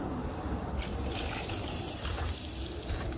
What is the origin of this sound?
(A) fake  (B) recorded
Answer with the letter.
B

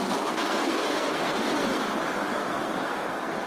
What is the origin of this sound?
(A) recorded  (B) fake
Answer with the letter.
B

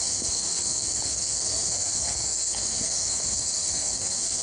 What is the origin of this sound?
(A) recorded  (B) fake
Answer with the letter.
B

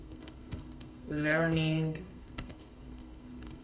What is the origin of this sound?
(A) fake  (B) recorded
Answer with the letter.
A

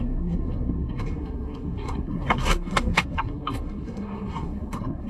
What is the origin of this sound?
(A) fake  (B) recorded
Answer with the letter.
A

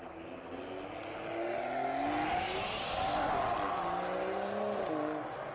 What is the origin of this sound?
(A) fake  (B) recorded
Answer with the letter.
B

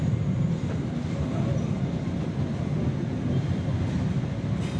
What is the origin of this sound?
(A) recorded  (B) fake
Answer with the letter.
A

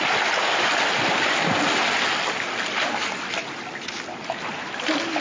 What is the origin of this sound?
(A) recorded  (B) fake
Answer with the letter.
A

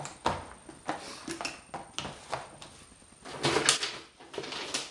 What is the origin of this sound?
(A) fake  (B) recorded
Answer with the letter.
B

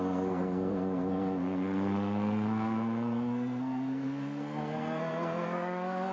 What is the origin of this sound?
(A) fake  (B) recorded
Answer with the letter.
A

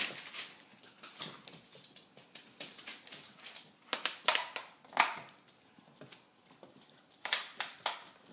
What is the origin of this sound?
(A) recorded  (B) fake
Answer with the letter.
A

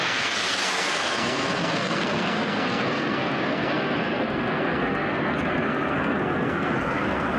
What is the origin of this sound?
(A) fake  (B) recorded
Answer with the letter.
A